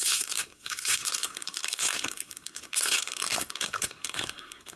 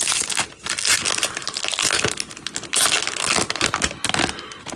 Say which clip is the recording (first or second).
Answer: second